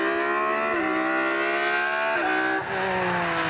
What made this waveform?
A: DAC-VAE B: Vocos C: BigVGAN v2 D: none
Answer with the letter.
D